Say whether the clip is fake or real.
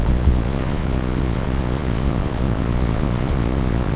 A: fake